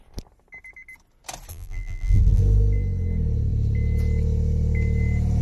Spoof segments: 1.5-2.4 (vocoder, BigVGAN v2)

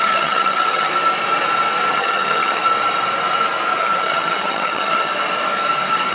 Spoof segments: 0.0-0.9 (vocoder, HiFi-GAN); 1.9-2.6; 3.8-5.1

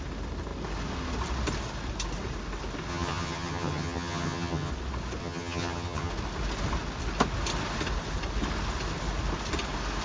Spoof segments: 2.9-4.7 (vocoder, HiFi-GAN); 5.2-6.1

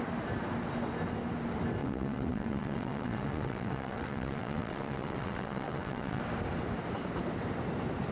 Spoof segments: 1.8-6.2 (vocoder, WaveNeXt)

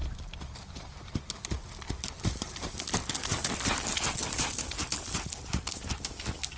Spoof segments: none

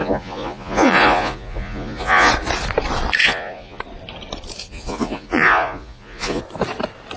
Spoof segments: 0.0-2.3 (vocoder, Vocos); 3.2-3.8; 4.6-6.4

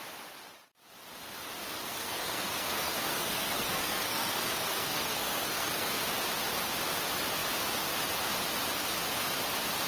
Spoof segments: 1.8-6.0 (codec, SNAC)

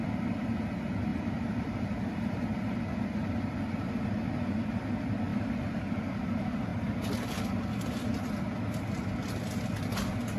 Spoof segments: 1.1-3.3 (vocoder, BigVGAN v2); 5.3-5.8